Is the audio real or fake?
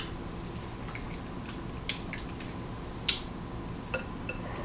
real